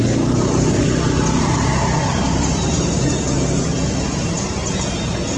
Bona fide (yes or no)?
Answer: yes